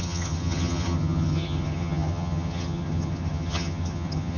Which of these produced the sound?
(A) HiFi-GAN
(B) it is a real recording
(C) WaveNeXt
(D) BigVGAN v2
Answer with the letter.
A